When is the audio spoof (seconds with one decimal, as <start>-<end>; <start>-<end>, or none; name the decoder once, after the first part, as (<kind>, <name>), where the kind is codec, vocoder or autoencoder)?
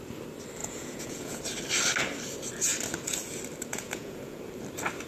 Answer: 0.6-1.4 (vocoder, Vocos); 3.7-4.4